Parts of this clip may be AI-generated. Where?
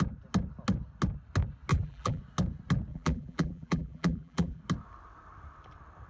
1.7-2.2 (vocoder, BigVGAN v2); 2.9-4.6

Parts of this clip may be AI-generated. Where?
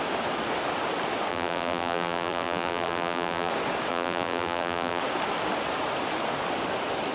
1.3-3.5 (vocoder, BigVGAN v2); 3.9-5.0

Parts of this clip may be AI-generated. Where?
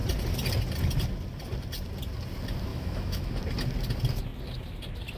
2.7-3.3 (autoencoder, DAC-VAE)